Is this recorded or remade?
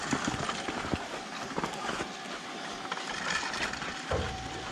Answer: remade